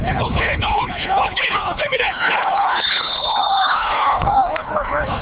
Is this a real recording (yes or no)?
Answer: no